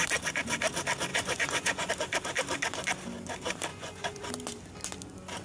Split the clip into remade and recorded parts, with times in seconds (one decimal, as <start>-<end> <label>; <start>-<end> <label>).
0.0-1.1 recorded; 1.1-1.9 remade; 1.9-3.7 recorded; 3.7-4.3 remade; 4.3-5.4 recorded